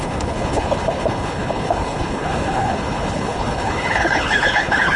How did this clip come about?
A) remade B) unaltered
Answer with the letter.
A